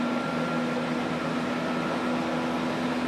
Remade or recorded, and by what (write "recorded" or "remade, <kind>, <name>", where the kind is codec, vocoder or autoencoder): recorded